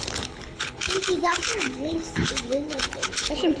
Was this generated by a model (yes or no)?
yes